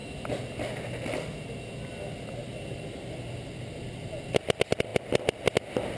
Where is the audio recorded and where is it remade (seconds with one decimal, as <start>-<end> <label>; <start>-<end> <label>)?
0.0-6.0 recorded